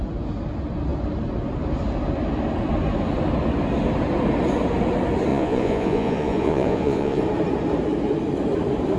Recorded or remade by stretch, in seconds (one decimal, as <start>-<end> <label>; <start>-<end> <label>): 0.0-5.3 recorded; 5.3-7.2 remade; 7.2-9.0 recorded